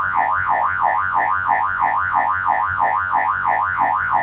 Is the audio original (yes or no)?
no